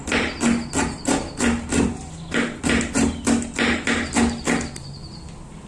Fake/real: real